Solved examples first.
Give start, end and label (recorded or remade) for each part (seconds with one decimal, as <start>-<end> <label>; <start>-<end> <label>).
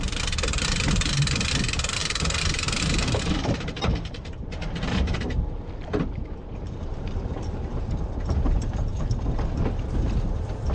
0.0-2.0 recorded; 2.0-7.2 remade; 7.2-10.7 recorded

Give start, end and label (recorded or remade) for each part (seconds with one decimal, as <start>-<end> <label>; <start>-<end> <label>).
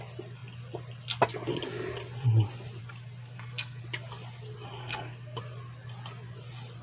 0.0-3.2 recorded; 3.2-3.8 remade; 3.8-4.8 recorded; 4.8-5.4 remade; 5.4-6.8 recorded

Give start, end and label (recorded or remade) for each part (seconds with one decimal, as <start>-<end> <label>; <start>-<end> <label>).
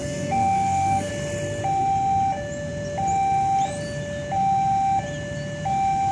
0.0-1.1 remade; 1.1-6.1 recorded